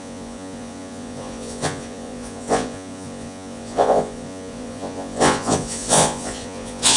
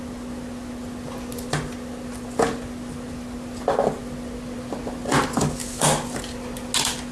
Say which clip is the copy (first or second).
first